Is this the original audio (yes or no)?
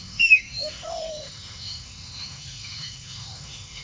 no